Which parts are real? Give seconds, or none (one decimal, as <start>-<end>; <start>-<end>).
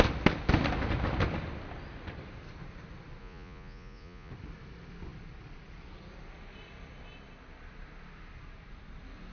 0.0-3.2; 4.3-9.3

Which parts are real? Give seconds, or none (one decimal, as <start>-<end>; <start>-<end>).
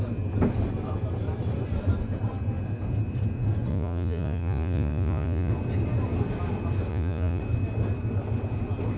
0.0-3.7; 5.5-6.9; 7.4-9.0